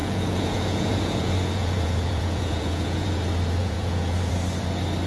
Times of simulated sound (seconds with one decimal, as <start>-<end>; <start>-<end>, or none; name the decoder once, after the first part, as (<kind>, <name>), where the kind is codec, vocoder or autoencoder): 0.0-3.1 (vocoder, Vocos); 3.6-4.3